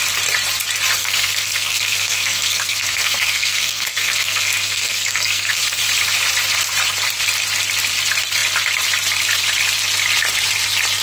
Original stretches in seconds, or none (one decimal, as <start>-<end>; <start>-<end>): 0.0-1.0; 5.6-11.0